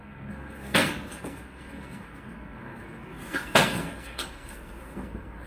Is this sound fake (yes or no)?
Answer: yes